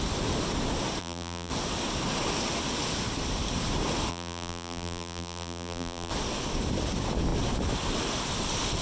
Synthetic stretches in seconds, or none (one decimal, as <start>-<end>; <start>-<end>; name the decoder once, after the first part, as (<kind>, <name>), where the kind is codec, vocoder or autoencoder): 1.0-1.5 (vocoder, BigVGAN v2); 4.1-6.1